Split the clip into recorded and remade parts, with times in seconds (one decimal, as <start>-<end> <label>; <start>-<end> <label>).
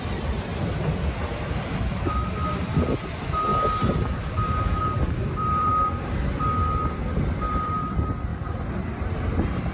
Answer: 0.0-0.5 remade; 0.5-2.1 recorded; 2.1-3.5 remade; 3.5-4.8 recorded; 4.8-5.7 remade; 5.7-7.5 recorded; 7.5-9.7 remade